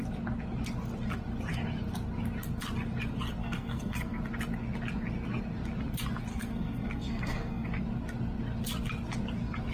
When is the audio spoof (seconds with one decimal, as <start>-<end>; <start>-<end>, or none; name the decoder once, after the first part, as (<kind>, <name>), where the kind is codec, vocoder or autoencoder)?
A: 3.4-4.2 (codec, SNAC); 6.3-7.7